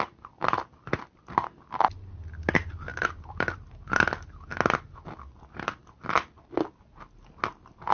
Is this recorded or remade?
recorded